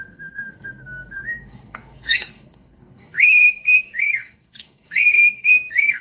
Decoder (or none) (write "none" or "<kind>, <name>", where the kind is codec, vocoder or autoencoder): codec, SNAC